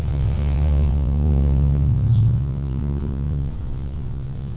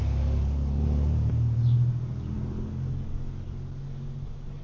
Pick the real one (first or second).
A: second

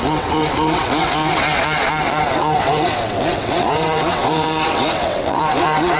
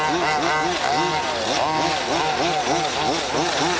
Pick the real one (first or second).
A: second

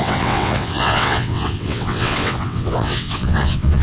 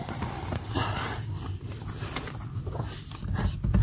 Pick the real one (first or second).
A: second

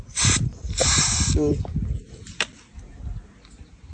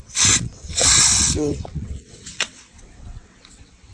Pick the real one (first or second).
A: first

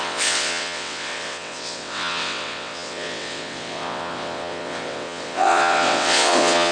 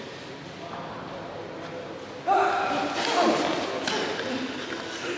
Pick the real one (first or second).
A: second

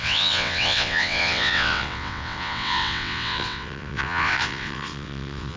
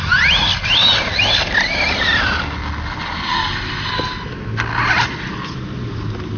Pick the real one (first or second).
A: second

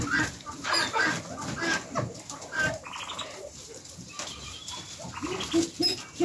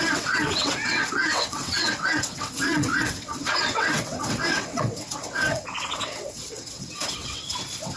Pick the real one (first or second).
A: first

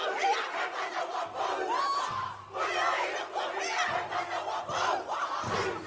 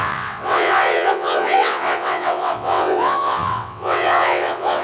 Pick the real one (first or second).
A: first